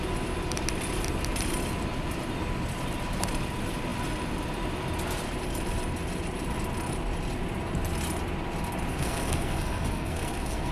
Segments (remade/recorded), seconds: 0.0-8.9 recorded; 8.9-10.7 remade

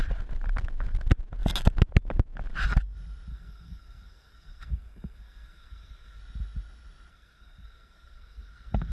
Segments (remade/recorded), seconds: 0.0-3.3 recorded; 3.3-6.2 remade; 6.2-7.1 recorded; 7.1-8.9 remade

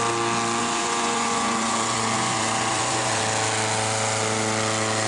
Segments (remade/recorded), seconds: 0.0-0.6 recorded; 0.6-3.2 remade; 3.2-5.1 recorded

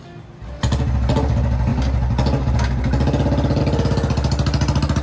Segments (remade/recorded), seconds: 0.0-5.0 recorded